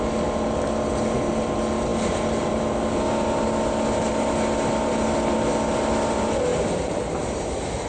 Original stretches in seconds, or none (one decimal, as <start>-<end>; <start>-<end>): 0.0-7.9